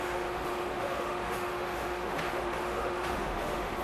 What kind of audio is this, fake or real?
fake